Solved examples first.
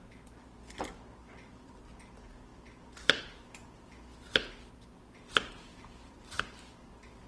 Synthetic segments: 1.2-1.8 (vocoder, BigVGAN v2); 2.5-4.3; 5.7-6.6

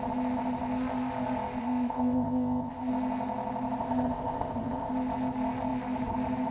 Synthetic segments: 1.6-2.9 (codec, ZipCodec); 3.8-4.9

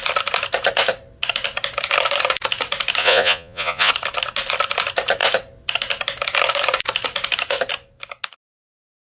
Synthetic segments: 3.0-3.9 (vocoder, Vocos)

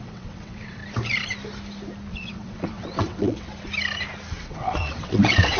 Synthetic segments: 0.0-0.8 (vocoder, WaveNeXt); 2.1-3.5; 4.3-5.6